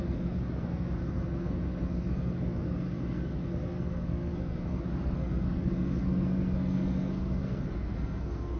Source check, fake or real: fake